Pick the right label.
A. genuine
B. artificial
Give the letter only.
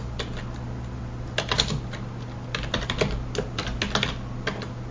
A